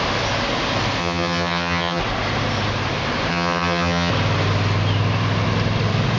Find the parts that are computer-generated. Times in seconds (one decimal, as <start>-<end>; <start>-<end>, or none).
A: 1.0-2.0; 3.3-4.1